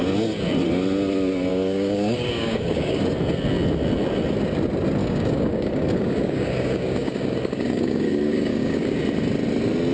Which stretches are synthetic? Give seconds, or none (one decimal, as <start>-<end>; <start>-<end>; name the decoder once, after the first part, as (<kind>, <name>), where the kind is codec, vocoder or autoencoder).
1.5-3.0 (codec, DAC); 5.0-9.0